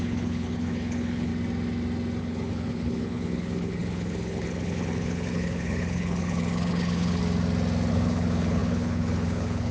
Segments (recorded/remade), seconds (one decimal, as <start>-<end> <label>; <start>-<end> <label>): 0.0-1.3 remade; 1.3-2.2 recorded; 2.2-7.2 remade; 7.2-7.9 recorded; 7.9-9.7 remade